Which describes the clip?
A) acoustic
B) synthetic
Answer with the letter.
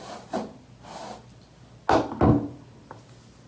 A